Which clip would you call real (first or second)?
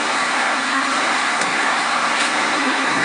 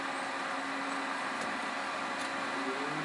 second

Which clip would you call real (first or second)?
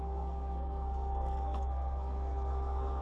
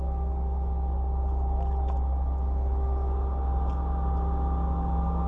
second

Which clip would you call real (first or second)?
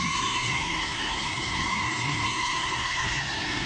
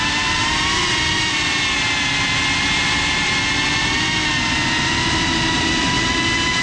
second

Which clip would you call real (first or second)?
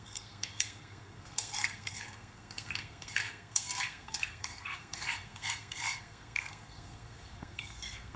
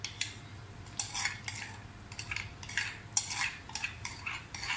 second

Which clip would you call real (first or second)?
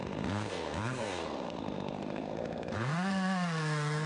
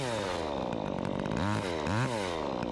second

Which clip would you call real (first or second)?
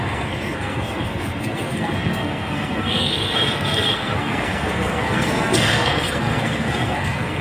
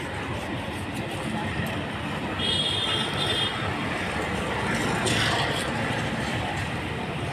second